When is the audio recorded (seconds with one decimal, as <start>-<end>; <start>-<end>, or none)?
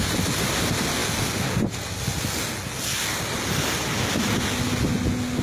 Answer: 0.0-5.4